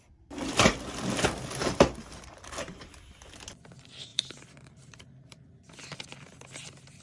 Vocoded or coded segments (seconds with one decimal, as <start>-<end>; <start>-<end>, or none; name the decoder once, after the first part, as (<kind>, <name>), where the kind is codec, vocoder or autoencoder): 1.6-2.8 (vocoder, BigVGAN v2); 4.1-5.4